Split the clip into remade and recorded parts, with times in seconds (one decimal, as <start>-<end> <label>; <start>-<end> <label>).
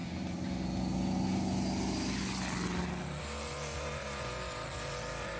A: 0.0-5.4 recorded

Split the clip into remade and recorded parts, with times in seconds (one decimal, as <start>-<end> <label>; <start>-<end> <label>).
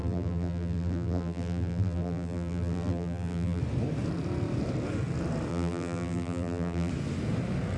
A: 0.0-3.6 remade; 3.6-5.5 recorded; 5.5-6.9 remade; 6.9-7.8 recorded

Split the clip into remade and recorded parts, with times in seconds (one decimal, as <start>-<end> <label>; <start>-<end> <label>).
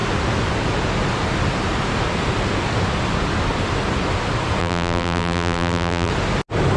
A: 0.0-4.6 recorded; 4.6-6.1 remade; 6.1-6.8 recorded